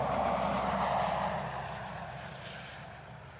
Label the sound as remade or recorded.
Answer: recorded